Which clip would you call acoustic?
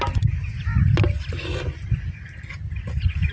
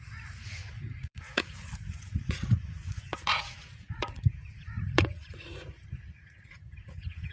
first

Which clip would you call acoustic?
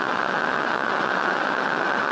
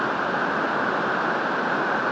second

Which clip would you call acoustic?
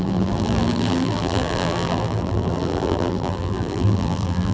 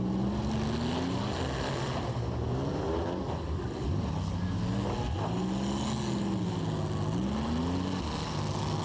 second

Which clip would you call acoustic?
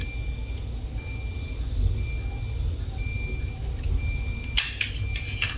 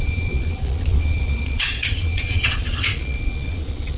first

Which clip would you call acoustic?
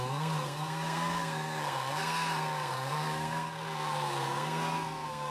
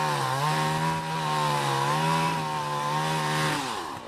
second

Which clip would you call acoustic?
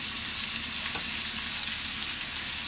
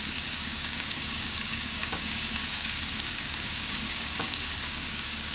first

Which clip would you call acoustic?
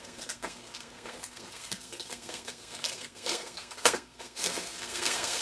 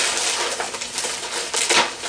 second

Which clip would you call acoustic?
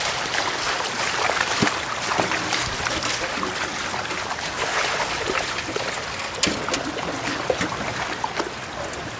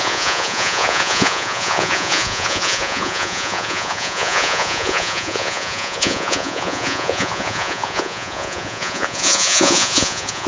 first